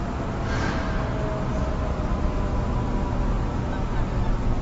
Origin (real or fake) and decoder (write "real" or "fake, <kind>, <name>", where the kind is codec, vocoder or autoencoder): real